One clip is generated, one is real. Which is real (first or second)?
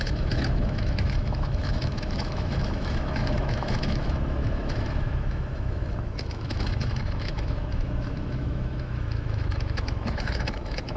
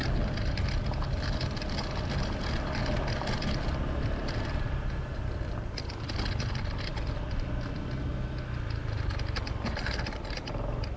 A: second